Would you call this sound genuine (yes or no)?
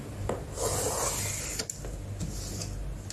yes